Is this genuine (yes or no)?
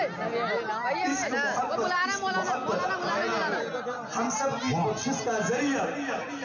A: yes